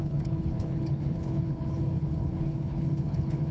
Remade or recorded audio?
remade